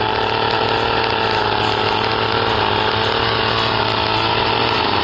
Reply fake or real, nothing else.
real